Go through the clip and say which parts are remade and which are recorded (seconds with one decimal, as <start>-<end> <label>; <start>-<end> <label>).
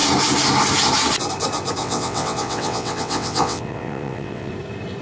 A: 0.0-1.8 recorded; 1.8-4.5 remade; 4.5-5.0 recorded